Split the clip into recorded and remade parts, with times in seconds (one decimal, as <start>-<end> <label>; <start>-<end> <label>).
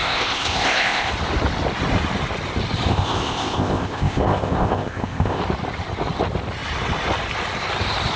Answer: 0.0-1.1 remade; 1.1-2.9 recorded; 2.9-5.4 remade; 5.4-8.2 recorded